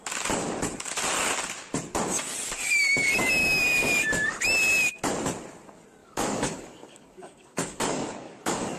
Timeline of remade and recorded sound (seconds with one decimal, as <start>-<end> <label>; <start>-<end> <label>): 0.0-3.4 recorded; 3.4-4.0 remade; 4.0-6.0 recorded; 6.0-8.8 remade

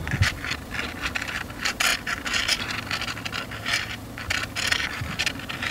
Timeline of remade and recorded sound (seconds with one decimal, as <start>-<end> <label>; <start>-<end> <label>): 0.0-5.7 recorded